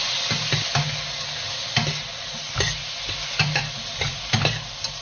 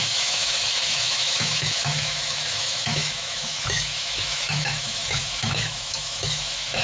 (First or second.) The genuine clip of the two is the first